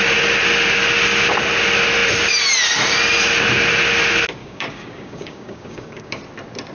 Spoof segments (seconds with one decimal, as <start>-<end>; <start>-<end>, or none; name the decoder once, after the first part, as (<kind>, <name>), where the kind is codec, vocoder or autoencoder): 4.4-6.2 (codec, DAC)